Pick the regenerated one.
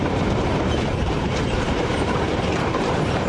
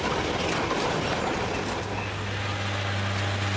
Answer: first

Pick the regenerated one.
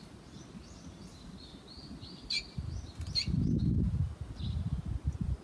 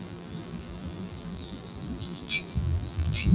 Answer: second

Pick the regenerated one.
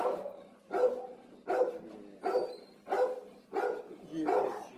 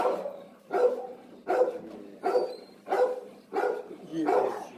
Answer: second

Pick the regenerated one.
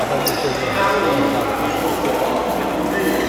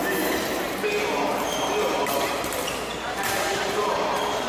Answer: second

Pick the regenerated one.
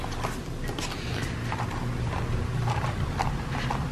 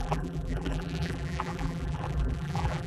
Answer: second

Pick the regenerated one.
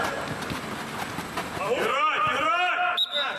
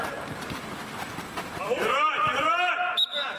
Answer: second